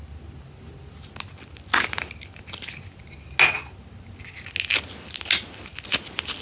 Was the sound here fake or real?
real